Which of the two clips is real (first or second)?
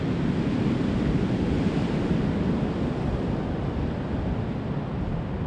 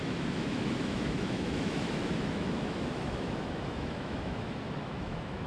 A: first